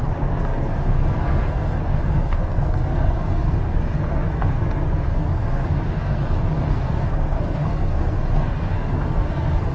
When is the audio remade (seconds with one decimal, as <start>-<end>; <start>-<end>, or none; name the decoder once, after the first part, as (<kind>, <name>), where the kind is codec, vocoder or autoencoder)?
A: 0.0-6.2 (codec, SNAC); 6.7-9.7